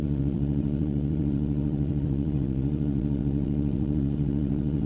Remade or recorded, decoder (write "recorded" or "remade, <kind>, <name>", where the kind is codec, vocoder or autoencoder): remade, vocoder, WaveNeXt